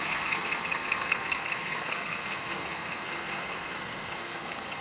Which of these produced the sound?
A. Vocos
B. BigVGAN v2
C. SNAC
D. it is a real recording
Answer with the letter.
C